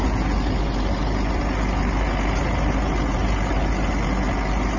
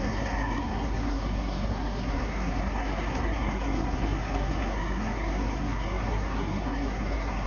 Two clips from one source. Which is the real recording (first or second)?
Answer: first